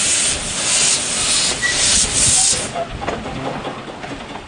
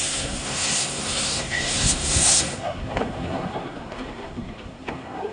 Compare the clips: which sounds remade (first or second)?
second